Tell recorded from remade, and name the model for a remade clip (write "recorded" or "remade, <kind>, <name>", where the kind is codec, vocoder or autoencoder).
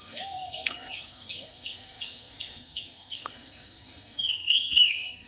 remade, codec, SNAC